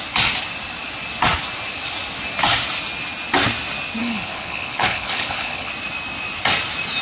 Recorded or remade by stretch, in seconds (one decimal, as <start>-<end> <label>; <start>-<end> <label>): 0.0-4.0 recorded; 4.0-5.7 remade; 5.7-7.0 recorded